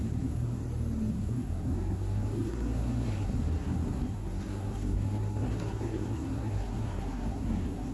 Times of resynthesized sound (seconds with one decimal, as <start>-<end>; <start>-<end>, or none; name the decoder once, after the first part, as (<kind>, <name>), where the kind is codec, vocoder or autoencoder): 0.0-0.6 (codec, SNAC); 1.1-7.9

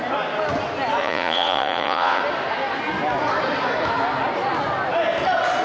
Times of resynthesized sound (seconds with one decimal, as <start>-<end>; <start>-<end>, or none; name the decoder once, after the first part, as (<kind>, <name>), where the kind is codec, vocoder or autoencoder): 1.0-2.2 (vocoder, Vocos)

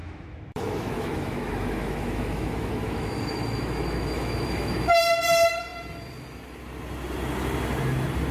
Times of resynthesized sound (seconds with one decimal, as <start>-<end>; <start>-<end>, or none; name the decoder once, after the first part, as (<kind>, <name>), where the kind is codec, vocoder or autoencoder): 0.0-5.0 (autoencoder, DAC-VAE)